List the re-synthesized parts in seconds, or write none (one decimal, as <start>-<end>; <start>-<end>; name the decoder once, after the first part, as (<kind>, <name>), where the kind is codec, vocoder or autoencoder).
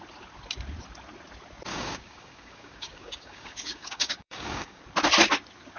1.7-4.8 (codec, DAC)